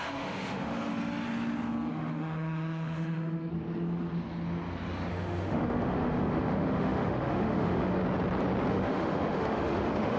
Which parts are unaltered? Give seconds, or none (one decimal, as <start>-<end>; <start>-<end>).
0.9-1.9; 3.5-5.1; 8.0-8.7